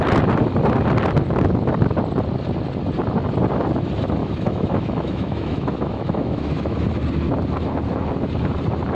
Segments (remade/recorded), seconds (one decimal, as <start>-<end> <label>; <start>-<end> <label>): 0.0-4.2 recorded; 4.2-6.9 remade; 6.9-8.9 recorded